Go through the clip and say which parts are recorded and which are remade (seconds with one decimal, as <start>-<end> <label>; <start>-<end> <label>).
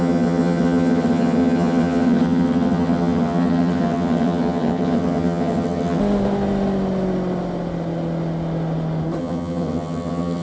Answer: 0.0-6.0 remade; 6.0-9.2 recorded; 9.2-10.4 remade